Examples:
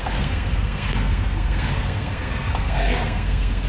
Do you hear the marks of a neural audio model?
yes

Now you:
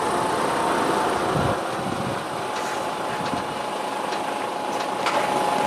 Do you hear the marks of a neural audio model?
no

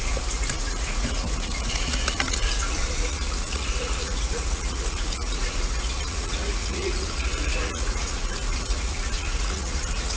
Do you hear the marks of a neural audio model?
yes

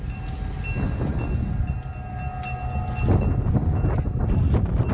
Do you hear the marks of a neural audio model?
no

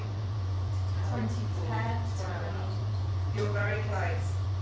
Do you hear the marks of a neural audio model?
yes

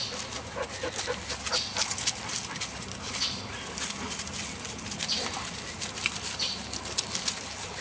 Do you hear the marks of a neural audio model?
no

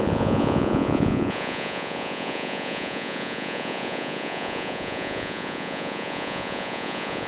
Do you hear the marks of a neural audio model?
yes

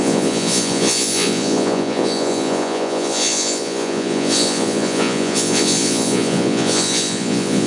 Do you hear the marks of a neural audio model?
yes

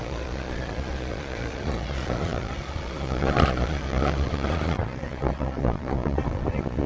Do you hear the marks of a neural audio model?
yes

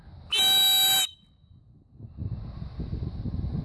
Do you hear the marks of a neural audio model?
no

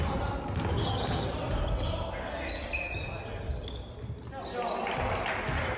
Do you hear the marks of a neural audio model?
no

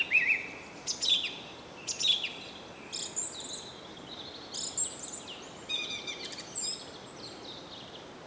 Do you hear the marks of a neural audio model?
no